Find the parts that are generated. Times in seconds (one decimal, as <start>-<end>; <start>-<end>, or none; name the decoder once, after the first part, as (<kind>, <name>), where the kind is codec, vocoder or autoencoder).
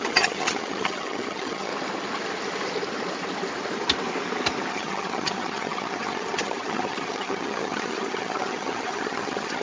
0.0-1.7 (vocoder, HiFi-GAN); 4.7-9.6